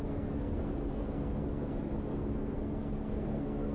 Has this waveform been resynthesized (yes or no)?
yes